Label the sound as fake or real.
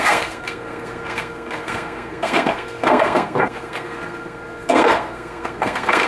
fake